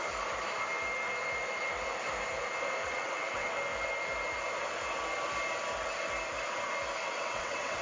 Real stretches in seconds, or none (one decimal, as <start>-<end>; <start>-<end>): 0.0-2.8; 3.5-7.0